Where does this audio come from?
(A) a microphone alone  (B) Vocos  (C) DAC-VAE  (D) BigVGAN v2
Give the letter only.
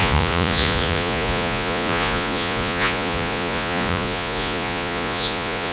B